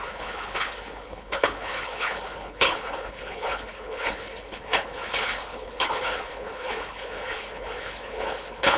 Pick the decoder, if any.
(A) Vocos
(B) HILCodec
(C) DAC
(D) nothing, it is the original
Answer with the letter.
B